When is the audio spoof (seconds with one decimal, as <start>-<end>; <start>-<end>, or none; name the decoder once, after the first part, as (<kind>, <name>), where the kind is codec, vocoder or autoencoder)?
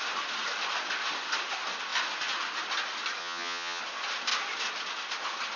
3.2-3.8 (vocoder, HiFi-GAN)